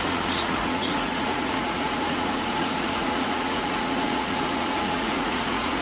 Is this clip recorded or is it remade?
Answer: remade